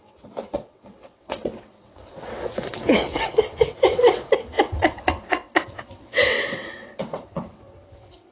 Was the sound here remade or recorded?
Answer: remade